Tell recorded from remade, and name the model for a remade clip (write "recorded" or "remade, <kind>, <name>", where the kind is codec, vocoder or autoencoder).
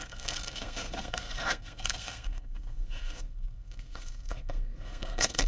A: remade, codec, SNAC